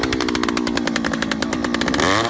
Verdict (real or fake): real